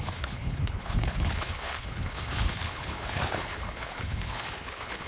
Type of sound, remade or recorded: remade